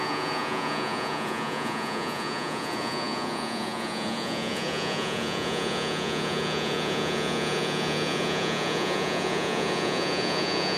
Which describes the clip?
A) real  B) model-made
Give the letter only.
B